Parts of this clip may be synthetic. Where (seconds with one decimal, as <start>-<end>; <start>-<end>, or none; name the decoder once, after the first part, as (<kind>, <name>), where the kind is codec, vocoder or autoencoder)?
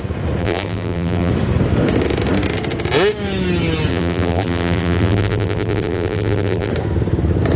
0.4-1.3 (vocoder, BigVGAN v2); 3.9-6.7